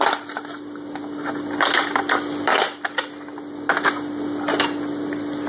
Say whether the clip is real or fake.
real